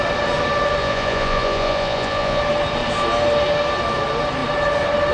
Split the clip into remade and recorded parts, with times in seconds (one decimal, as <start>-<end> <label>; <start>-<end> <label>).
0.0-0.8 recorded; 0.8-2.4 remade; 2.4-5.1 recorded